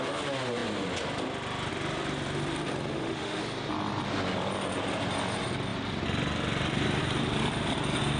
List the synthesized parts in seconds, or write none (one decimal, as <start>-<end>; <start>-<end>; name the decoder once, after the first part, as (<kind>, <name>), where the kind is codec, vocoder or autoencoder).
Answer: 2.9-3.4 (autoencoder, DAC-VAE)